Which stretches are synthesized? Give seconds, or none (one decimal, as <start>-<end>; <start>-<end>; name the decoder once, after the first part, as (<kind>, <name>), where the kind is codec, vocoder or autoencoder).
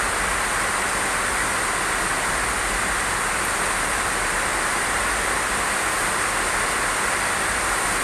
none